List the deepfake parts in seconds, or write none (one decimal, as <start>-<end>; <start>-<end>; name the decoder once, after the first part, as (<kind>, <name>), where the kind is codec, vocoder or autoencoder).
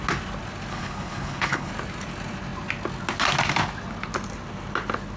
0.7-1.7 (codec, HILCodec)